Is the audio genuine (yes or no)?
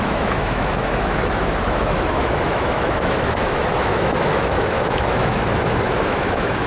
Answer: no